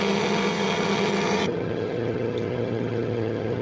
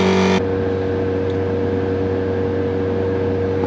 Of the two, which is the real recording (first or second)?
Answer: second